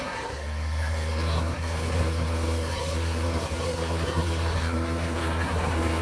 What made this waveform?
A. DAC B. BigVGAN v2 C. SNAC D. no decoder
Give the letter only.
C